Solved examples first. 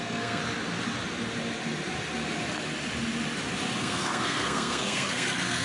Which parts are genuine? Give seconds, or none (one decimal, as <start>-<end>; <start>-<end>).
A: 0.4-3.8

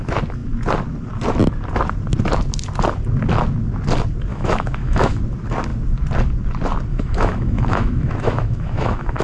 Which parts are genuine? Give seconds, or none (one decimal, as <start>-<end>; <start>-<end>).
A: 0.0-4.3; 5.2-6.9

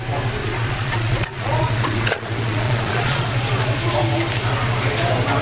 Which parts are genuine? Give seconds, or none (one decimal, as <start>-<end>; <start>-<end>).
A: 0.0-0.4; 3.2-5.4

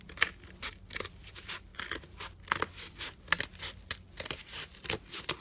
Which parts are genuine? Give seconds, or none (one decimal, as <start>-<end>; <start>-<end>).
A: 0.0-5.4